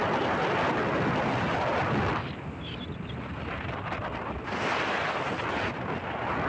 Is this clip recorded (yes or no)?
yes